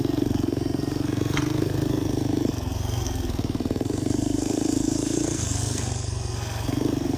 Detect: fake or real fake